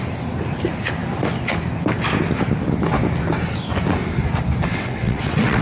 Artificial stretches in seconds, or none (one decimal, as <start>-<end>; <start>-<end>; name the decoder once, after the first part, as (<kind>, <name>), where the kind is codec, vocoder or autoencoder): 4.7-5.6 (vocoder, WaveNeXt)